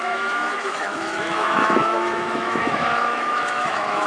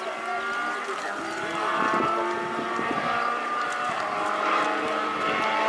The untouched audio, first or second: second